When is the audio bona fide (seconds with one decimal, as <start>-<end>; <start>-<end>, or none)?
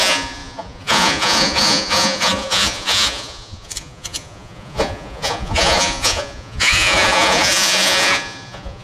none